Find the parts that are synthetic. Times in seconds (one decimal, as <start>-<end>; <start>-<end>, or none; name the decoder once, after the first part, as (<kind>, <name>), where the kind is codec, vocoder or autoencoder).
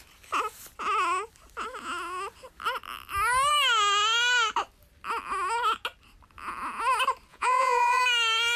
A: 7.3-8.0 (vocoder, Vocos)